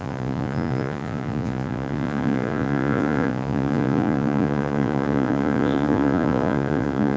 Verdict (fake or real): fake